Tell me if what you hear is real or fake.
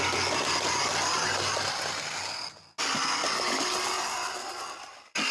real